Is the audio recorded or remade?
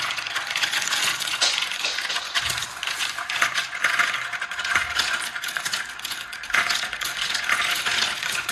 remade